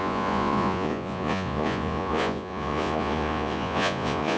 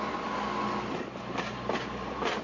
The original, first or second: second